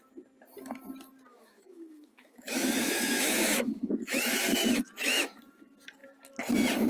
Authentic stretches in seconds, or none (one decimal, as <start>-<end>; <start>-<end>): 0.0-1.3; 5.4-6.9